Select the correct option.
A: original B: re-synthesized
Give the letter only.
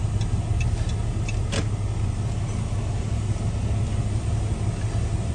A